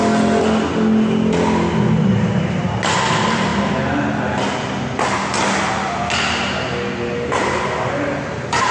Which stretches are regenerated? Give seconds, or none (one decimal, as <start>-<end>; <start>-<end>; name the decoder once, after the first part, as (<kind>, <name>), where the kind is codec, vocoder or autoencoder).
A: none